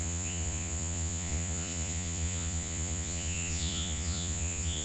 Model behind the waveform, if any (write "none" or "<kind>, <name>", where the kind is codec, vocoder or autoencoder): vocoder, Vocos